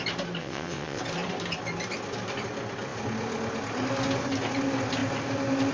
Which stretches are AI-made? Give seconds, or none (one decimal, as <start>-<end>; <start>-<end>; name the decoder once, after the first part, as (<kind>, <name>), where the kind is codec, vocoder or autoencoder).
0.4-1.0 (vocoder, WaveNeXt)